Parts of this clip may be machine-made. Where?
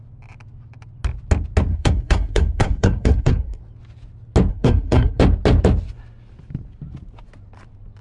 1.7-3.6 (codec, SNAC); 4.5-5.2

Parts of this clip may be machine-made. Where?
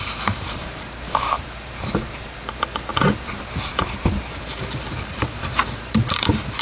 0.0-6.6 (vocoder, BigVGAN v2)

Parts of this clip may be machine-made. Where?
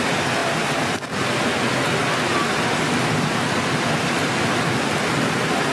none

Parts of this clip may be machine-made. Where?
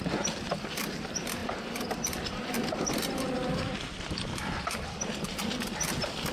1.4-5.2 (vocoder, BigVGAN v2)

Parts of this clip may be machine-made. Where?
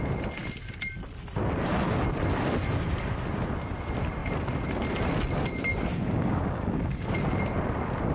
5.7-7.1 (codec, DAC)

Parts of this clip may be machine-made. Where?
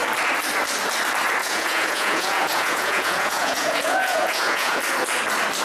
1.4-4.8 (vocoder, Vocos)